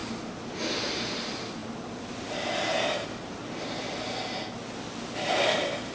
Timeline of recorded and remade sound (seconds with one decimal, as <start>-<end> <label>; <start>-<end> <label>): 0.0-5.9 recorded